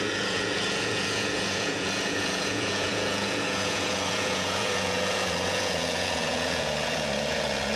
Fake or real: fake